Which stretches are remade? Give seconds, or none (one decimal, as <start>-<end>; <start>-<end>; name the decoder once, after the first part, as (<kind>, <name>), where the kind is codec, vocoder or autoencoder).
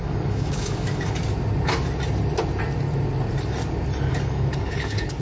0.0-1.2 (codec, DAC); 4.1-5.2